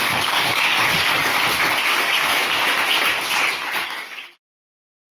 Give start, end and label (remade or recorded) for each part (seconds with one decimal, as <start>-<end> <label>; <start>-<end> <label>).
0.0-1.3 remade; 1.3-2.0 recorded; 2.0-2.4 remade; 2.4-3.6 recorded; 3.6-5.1 remade